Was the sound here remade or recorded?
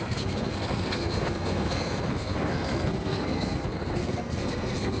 remade